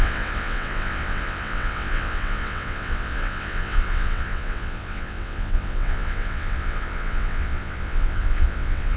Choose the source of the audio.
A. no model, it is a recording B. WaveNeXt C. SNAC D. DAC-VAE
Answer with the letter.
B